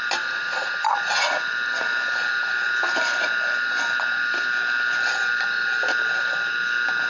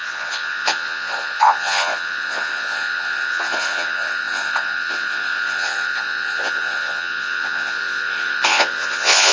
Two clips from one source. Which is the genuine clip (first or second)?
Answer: first